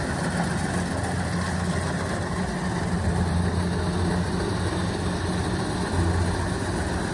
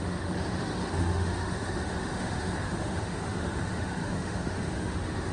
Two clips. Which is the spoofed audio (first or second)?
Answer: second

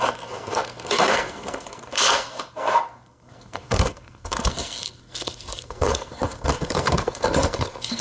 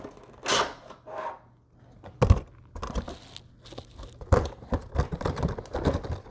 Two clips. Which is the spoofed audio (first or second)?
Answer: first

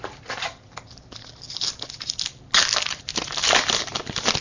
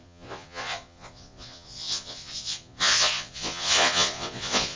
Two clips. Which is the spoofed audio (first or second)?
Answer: second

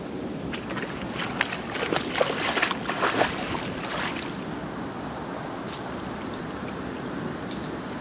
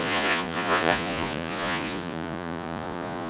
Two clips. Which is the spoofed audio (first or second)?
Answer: second